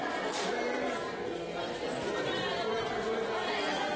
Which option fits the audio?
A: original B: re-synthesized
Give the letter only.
A